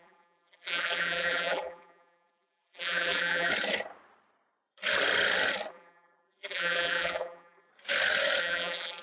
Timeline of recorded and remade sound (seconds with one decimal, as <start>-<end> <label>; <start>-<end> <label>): 0.0-3.5 remade; 3.5-5.7 recorded; 5.7-7.7 remade; 7.7-8.4 recorded; 8.4-9.0 remade